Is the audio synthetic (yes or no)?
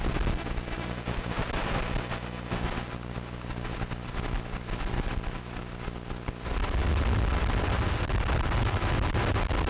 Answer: no